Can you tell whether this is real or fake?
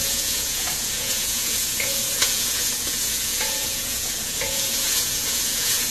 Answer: fake